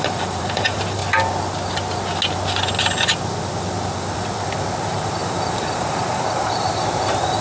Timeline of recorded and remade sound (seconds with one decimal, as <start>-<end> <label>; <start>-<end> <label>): 0.0-1.0 remade; 1.0-4.8 recorded; 4.8-7.4 remade